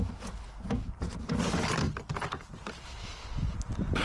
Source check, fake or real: real